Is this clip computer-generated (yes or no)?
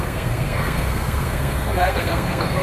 yes